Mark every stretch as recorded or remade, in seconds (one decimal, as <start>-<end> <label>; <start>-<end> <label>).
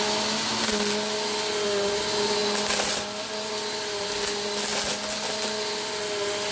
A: 0.0-6.5 recorded